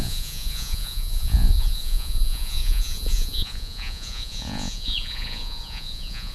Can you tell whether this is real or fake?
fake